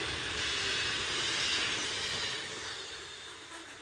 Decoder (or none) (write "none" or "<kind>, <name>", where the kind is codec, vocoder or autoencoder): none